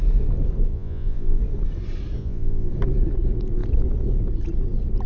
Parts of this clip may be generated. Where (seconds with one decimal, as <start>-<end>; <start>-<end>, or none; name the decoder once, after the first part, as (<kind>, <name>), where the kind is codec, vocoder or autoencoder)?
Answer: 0.7-1.4 (vocoder, Vocos); 2.2-2.7